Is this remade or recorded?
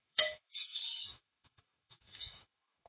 remade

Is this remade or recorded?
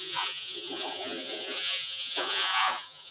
remade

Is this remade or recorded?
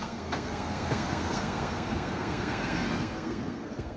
remade